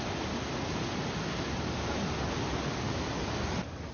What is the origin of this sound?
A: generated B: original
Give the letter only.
B